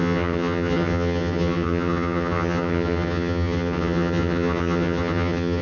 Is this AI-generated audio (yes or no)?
yes